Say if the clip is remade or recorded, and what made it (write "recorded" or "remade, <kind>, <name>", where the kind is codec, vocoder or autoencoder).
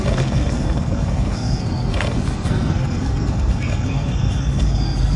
remade, codec, SNAC